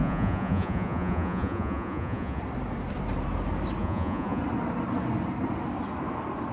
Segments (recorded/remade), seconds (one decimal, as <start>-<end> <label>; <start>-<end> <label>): 0.0-2.4 remade; 2.4-3.8 recorded; 3.8-4.4 remade; 4.4-6.5 recorded